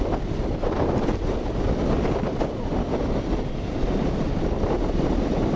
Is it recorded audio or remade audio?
recorded